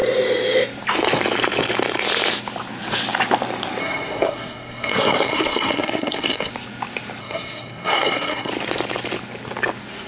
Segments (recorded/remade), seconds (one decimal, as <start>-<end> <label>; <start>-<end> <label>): 0.0-3.8 recorded; 3.8-6.5 remade; 6.5-7.2 recorded; 7.2-8.5 remade; 8.5-10.1 recorded